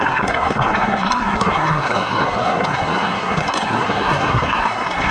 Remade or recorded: remade